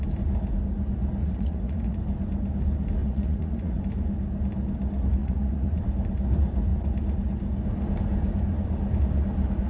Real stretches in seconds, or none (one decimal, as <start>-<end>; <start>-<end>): 0.0-1.2; 2.0-3.0; 3.8-5.2; 5.8-9.7